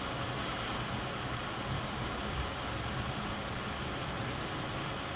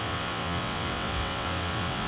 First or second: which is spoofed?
second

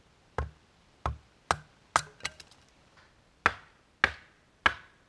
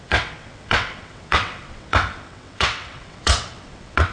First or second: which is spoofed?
second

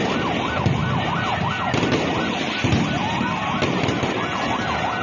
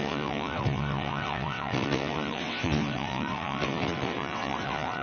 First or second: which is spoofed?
second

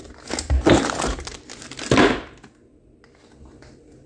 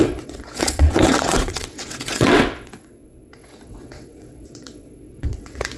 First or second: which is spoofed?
second